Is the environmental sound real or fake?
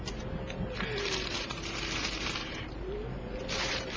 fake